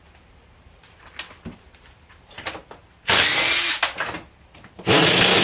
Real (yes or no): yes